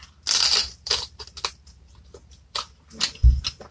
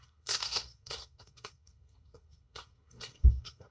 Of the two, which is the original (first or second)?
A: first